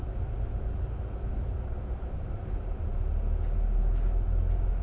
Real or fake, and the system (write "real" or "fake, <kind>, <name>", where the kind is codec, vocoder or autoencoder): real